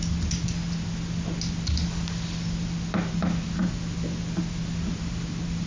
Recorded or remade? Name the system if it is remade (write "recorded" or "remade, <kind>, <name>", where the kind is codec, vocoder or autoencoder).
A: recorded